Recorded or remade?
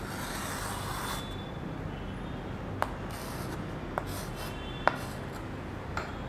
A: recorded